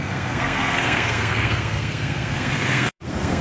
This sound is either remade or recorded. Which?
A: remade